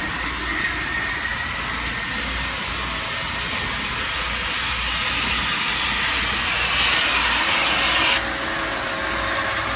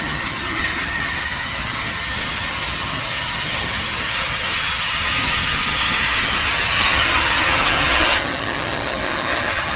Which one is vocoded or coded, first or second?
second